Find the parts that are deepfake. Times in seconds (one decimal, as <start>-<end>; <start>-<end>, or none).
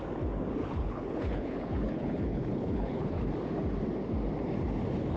0.6-3.1